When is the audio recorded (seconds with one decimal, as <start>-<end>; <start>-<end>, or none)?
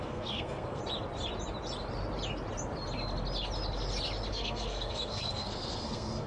0.8-4.3